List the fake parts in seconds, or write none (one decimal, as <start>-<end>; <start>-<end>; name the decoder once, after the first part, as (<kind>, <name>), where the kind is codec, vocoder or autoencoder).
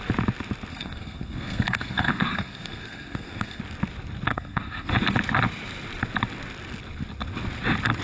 0.7-3.6 (codec, SNAC); 4.3-4.9